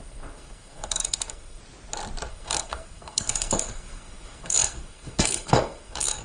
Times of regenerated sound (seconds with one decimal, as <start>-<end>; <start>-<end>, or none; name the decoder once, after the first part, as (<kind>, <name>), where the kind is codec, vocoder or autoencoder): 0.0-1.6 (codec, SNAC); 2.3-6.2